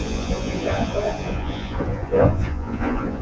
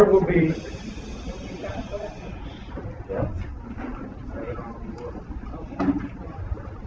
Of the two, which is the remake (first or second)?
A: first